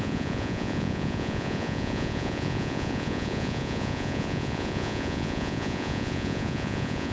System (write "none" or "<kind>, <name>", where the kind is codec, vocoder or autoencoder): vocoder, Vocos